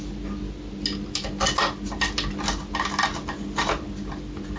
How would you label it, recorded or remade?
recorded